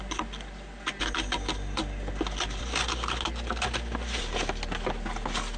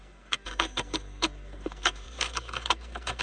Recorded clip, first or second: first